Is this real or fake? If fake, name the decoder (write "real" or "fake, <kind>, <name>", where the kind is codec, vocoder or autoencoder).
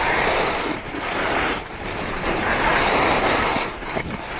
fake, vocoder, BigVGAN v2